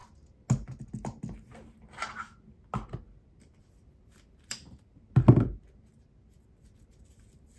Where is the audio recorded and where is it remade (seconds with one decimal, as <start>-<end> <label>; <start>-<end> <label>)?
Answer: 0.0-7.6 recorded